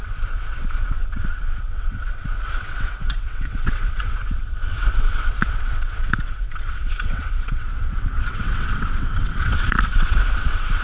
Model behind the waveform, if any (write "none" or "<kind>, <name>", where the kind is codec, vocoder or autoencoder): vocoder, WaveNeXt